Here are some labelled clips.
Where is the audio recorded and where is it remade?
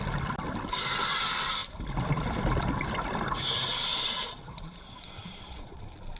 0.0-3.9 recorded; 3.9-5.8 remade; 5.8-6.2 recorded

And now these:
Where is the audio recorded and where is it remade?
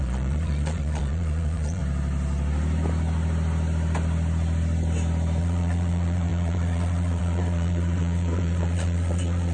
0.0-1.8 remade; 1.8-5.4 recorded; 5.4-9.5 remade